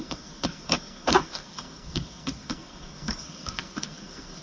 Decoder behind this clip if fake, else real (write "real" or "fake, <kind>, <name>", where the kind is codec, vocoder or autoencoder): fake, codec, SNAC